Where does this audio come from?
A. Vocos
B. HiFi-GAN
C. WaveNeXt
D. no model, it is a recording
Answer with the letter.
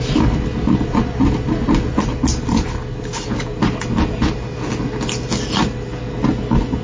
D